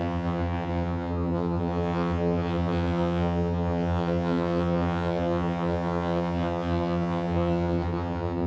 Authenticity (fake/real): fake